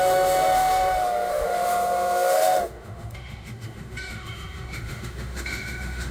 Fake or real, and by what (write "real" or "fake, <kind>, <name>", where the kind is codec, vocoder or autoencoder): fake, autoencoder, DAC-VAE